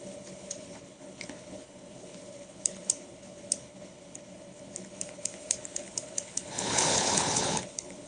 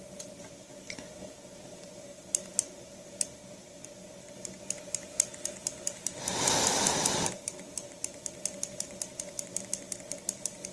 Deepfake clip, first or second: first